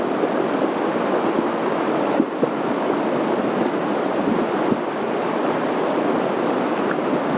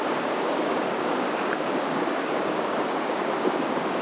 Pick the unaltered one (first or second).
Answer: first